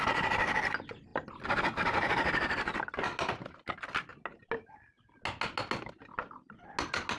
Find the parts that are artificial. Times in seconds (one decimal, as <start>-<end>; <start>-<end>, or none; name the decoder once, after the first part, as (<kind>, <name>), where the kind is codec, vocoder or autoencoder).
none